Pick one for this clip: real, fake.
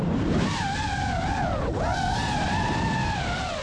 fake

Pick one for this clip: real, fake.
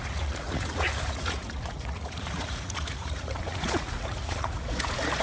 fake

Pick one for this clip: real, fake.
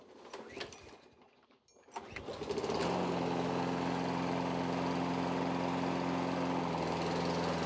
real